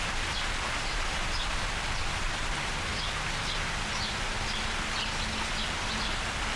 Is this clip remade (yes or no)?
no